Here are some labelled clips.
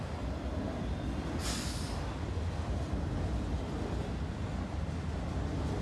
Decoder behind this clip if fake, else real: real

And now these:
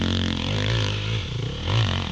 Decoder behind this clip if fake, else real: real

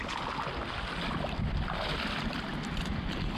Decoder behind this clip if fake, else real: real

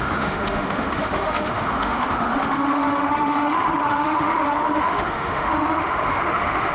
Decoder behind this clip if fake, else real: fake, autoencoder, DAC-VAE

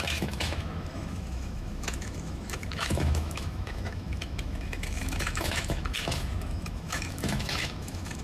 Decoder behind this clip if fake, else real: fake, autoencoder, DAC-VAE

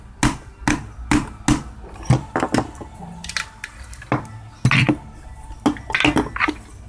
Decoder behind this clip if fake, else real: real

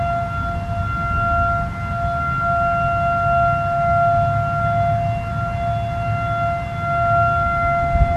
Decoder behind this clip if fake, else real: real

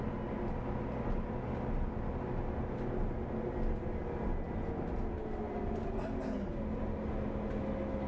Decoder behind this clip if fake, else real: real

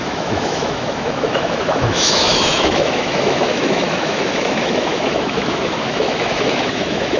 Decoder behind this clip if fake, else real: fake, autoencoder, DAC-VAE